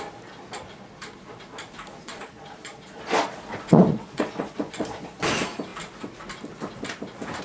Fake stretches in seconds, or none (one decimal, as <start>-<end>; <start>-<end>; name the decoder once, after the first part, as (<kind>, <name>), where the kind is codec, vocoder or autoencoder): 2.0-5.3 (vocoder, Vocos)